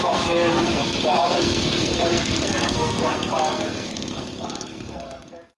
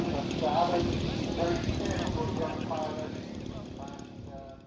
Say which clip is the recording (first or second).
second